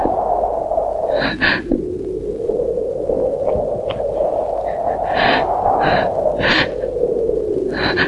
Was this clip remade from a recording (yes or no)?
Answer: no